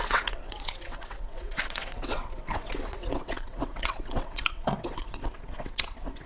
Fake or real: fake